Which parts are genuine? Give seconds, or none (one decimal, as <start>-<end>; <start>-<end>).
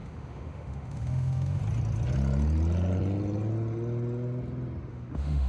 1.6-4.9